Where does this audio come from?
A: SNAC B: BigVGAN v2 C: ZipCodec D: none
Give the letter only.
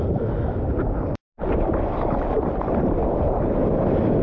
D